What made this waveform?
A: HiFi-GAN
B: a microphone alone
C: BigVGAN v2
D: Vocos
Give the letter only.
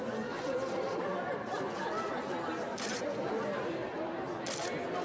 B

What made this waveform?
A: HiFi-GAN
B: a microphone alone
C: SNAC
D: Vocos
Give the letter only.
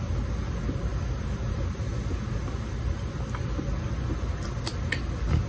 B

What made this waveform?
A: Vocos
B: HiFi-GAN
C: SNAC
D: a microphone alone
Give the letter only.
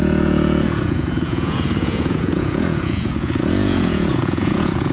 A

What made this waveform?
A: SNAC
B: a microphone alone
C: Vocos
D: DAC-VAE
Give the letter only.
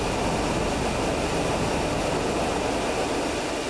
B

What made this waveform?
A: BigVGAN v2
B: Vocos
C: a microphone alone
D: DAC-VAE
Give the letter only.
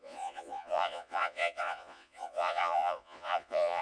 B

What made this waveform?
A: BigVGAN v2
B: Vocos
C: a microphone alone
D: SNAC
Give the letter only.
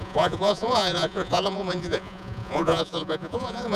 B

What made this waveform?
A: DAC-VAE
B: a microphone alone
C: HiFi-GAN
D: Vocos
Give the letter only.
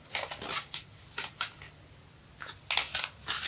B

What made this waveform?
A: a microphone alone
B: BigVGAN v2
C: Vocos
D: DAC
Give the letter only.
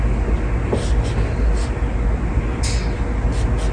A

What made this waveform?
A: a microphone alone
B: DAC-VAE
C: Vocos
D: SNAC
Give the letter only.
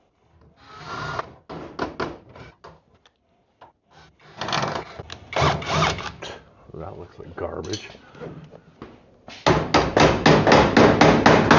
A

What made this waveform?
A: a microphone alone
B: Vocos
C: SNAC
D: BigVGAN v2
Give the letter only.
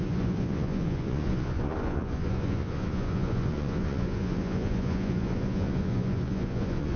B